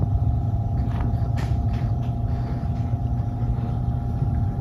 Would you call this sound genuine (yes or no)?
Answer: no